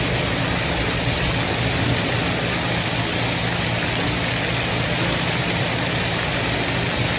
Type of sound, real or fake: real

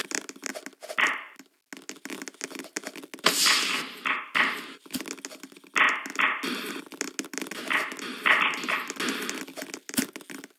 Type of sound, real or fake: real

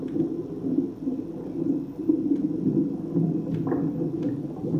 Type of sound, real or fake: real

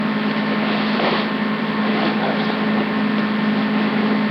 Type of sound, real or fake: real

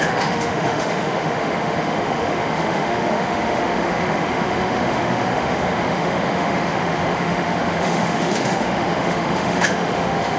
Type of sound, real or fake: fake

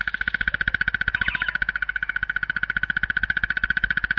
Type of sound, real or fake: fake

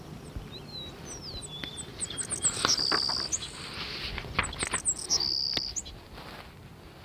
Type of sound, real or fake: real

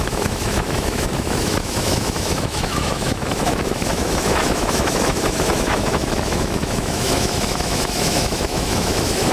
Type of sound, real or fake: fake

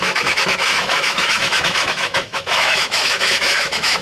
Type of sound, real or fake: fake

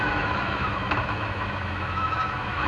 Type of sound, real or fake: fake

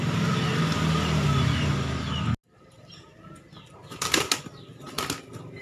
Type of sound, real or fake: real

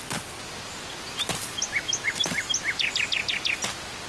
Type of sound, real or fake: real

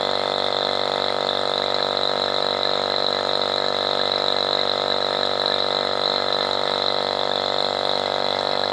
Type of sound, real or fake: real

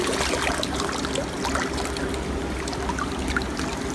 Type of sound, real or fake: real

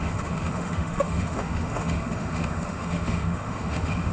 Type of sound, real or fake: fake